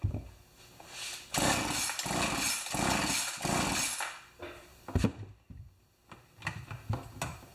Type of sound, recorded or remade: recorded